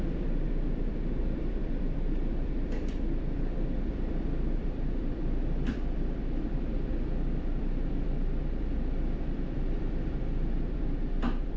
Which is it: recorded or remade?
remade